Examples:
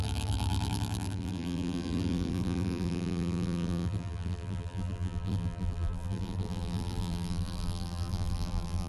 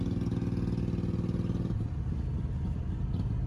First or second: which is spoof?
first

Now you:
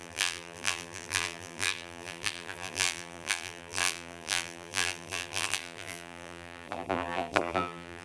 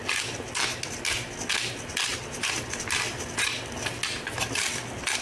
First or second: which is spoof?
first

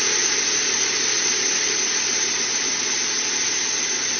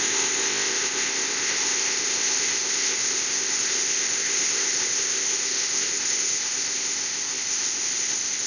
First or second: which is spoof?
second